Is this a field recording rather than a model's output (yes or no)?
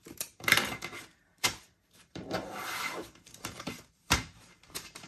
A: no